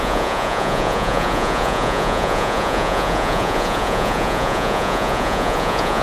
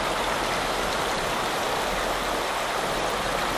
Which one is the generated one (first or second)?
first